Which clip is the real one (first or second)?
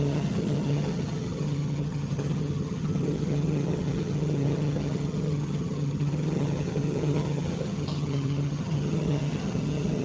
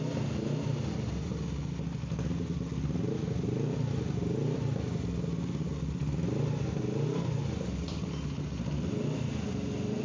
second